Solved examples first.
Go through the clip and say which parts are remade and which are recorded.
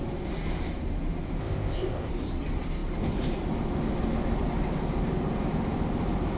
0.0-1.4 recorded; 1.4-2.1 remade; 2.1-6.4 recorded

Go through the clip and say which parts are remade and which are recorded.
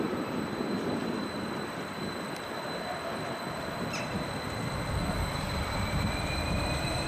0.0-1.0 remade; 1.0-5.3 recorded; 5.3-7.1 remade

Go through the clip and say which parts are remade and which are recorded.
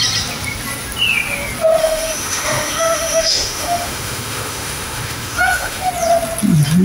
0.0-1.8 recorded; 1.8-5.9 remade; 5.9-6.8 recorded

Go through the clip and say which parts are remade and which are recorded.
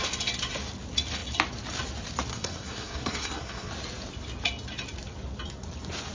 0.0-2.3 recorded; 2.3-3.7 remade; 3.7-6.1 recorded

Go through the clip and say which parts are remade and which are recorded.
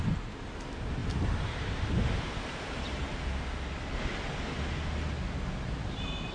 0.0-1.0 recorded; 1.0-3.1 remade; 3.1-6.3 recorded